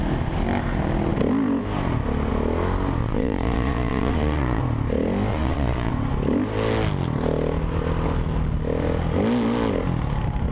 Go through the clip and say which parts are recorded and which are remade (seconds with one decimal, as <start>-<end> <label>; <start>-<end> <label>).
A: 0.0-3.0 recorded; 3.0-4.6 remade; 4.6-5.3 recorded; 5.3-5.9 remade; 5.9-10.5 recorded